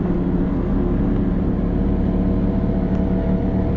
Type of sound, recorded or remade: recorded